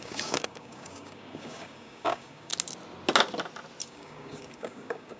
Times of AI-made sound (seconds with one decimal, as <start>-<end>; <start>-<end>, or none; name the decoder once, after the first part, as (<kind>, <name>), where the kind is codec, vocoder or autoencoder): 0.0-2.5 (codec, DAC); 3.8-5.2